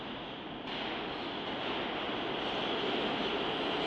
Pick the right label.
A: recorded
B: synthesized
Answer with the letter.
A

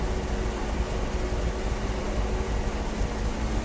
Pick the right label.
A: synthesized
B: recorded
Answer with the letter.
B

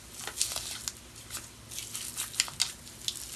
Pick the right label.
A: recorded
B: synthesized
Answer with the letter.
A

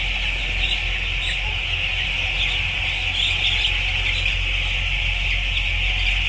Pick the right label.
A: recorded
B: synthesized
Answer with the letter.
A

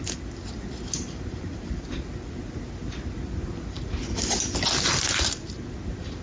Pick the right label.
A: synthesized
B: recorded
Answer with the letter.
B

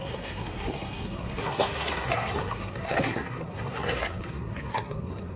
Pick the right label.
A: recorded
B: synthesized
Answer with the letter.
B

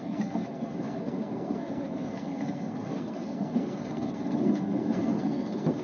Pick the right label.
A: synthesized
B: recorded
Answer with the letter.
A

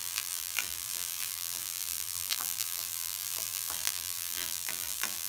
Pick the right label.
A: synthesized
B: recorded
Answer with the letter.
A